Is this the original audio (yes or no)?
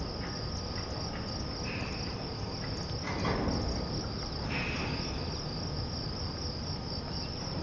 yes